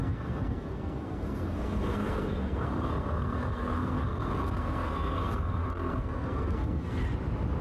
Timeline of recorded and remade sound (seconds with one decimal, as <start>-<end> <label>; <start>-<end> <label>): 0.0-7.0 remade; 7.0-7.6 recorded